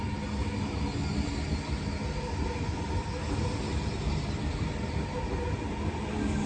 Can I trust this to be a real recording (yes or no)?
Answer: yes